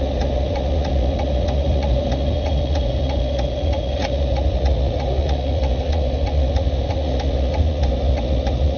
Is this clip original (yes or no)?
no